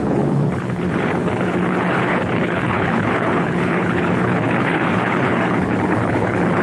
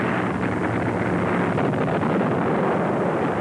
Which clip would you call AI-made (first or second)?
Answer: first